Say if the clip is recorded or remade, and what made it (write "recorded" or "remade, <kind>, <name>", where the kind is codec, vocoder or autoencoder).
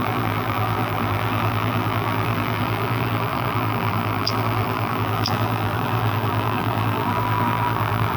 remade, vocoder, BigVGAN v2